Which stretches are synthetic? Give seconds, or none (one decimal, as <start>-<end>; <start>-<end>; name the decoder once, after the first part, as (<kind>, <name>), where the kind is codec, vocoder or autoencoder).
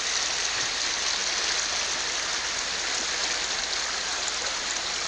none